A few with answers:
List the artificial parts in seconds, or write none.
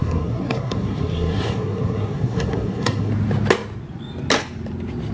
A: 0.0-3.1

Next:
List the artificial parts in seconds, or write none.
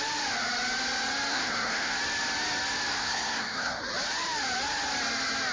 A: 1.3-2.0; 2.9-3.8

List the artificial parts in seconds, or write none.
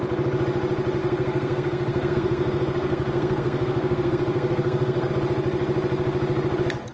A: 1.0-5.1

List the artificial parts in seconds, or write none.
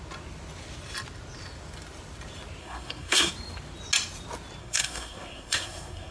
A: 2.6-3.3; 4.6-6.1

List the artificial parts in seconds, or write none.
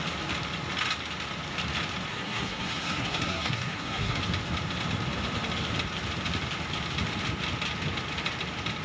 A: 2.1-4.2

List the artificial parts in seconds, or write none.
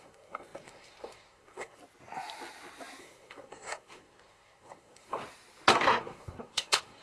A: 0.0-1.8; 3.0-5.2; 5.7-7.0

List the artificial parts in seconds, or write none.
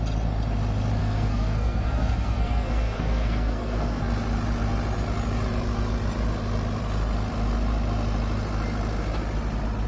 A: 1.0-4.0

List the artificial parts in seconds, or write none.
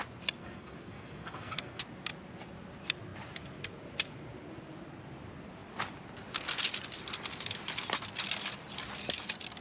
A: 0.4-1.8